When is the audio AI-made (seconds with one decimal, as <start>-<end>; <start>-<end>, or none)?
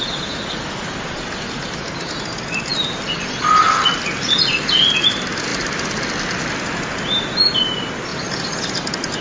none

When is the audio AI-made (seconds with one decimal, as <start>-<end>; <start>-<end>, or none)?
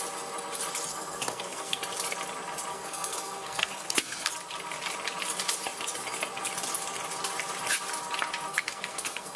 0.9-1.8; 2.7-4.3; 8.5-9.4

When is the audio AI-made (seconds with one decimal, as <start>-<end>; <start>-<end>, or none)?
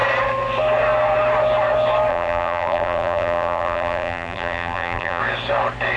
2.1-5.2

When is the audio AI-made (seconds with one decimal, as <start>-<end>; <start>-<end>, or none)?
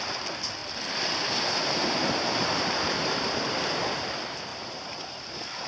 2.4-3.8; 4.5-5.7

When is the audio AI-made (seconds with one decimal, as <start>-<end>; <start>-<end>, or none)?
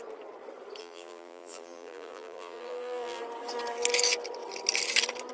0.8-3.2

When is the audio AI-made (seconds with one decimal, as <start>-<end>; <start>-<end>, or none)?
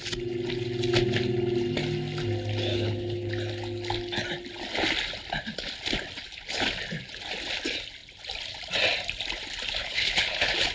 2.7-3.3; 9.8-10.7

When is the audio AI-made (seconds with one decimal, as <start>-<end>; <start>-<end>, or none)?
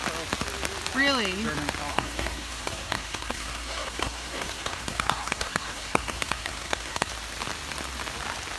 1.9-7.1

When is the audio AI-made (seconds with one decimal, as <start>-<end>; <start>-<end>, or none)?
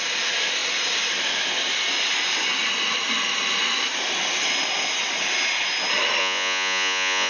6.2-7.3